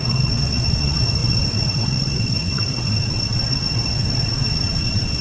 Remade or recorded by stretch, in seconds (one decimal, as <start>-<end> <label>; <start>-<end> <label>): 0.0-5.2 remade